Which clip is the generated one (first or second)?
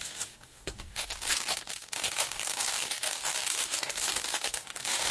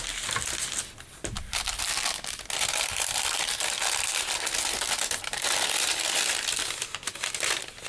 first